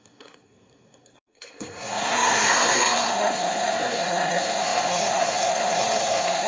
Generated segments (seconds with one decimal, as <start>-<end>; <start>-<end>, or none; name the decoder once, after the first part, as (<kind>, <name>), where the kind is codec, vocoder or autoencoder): 0.0-6.5 (codec, SNAC)